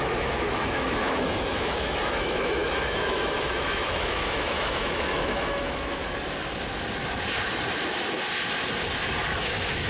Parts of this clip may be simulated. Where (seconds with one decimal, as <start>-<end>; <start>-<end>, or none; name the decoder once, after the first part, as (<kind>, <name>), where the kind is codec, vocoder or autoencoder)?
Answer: 0.0-6.0 (autoencoder, DAC-VAE); 9.3-9.9